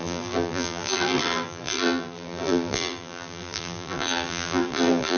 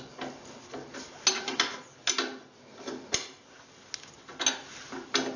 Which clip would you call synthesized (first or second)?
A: first